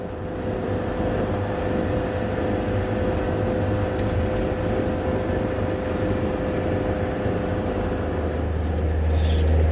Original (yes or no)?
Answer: yes